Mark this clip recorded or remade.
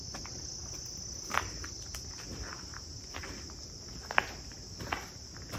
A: recorded